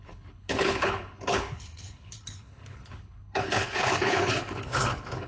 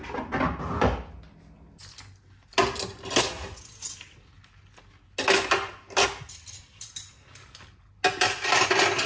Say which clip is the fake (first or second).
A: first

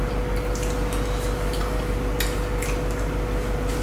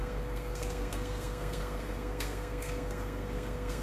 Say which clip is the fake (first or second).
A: second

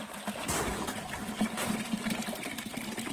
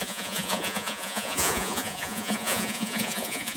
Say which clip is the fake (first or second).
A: second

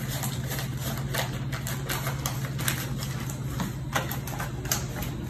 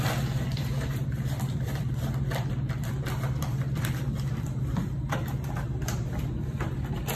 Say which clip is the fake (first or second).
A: second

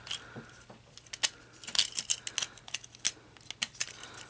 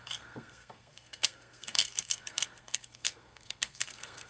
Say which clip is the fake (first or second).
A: second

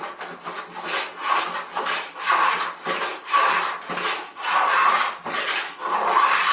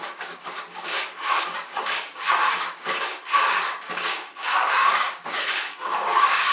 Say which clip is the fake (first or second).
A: second